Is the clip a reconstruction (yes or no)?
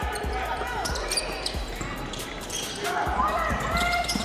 yes